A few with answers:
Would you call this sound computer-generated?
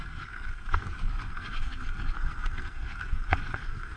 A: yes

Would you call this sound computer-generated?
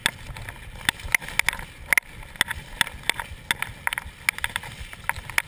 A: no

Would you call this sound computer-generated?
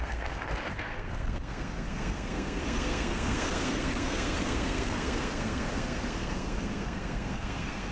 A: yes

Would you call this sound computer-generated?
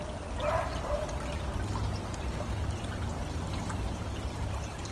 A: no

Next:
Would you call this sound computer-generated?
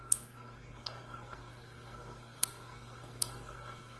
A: yes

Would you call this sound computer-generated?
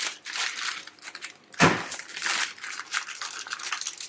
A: no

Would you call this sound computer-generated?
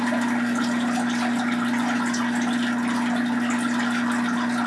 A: no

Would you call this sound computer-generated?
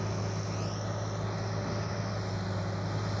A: no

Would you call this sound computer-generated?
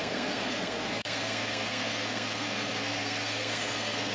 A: yes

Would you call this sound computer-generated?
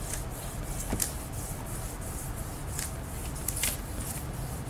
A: no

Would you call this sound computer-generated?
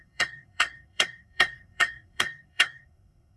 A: yes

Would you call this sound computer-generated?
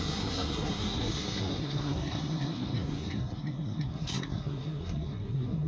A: yes